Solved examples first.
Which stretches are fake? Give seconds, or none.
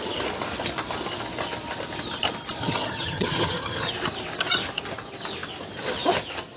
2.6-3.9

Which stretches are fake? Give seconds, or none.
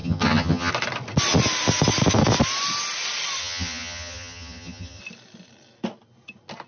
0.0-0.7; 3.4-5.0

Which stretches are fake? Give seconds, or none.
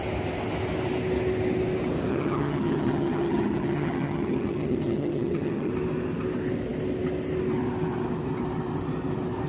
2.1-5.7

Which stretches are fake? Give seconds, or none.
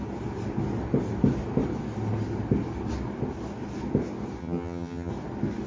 4.4-5.1